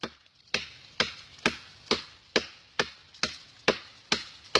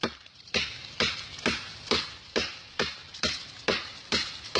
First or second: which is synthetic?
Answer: second